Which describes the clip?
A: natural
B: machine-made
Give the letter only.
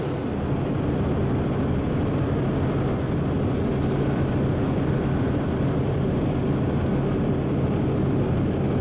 A